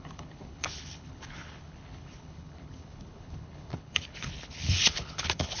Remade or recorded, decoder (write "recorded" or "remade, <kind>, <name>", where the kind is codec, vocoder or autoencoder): remade, codec, HILCodec